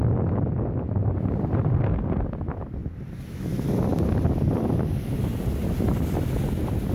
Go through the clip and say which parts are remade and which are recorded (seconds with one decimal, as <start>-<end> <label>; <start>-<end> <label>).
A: 0.0-1.0 recorded; 1.0-2.2 remade; 2.2-6.9 recorded